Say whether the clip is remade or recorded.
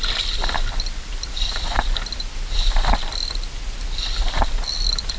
remade